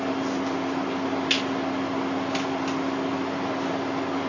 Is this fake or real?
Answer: real